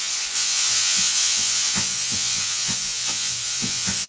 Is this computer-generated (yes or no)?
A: yes